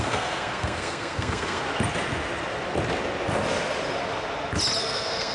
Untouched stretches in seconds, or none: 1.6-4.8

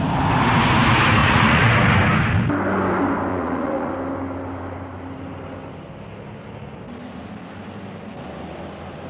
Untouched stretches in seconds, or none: 0.0-1.2; 1.7-3.3; 3.9-9.1